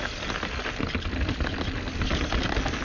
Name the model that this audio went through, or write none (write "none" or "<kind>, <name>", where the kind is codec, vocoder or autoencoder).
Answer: none